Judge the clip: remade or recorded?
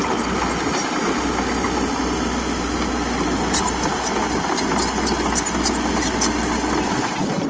recorded